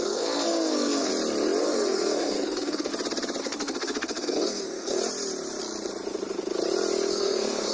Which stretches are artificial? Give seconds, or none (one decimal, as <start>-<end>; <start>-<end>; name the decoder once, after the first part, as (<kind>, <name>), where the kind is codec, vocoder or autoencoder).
0.0-1.1 (codec, SNAC); 1.6-2.9; 3.4-5.0; 7.1-7.7

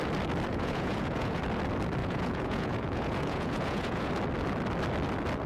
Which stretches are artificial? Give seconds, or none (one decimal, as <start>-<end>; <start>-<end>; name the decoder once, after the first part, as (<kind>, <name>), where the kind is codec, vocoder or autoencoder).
0.5-1.4 (vocoder, Vocos); 2.0-4.1

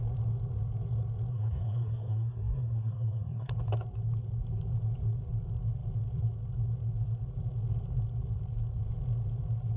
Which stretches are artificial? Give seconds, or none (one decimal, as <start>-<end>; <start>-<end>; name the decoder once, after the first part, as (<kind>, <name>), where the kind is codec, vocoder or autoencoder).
1.3-3.5 (codec, SNAC)

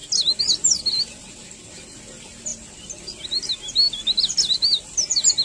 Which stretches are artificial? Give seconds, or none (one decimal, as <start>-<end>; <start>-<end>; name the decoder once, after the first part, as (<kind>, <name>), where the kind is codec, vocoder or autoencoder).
none

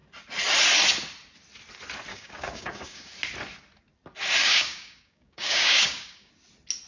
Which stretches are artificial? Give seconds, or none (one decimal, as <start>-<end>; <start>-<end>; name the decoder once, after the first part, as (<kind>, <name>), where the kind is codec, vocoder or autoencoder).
2.1-3.1 (codec, DAC); 4.4-6.3

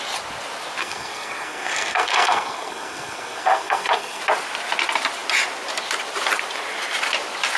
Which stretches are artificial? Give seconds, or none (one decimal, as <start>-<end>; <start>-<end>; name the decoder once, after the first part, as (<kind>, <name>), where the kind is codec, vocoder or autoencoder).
0.8-4.2 (codec, SNAC)

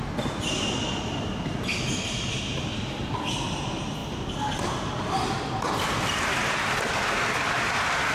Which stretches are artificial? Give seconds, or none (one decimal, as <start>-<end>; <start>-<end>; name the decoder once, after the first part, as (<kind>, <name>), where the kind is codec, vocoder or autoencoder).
none

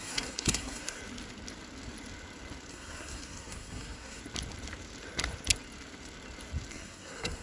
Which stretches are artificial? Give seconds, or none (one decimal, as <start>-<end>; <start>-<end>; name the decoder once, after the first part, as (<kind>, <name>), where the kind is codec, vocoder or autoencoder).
0.0-1.0 (codec, SNAC); 2.7-4.2; 6.7-7.4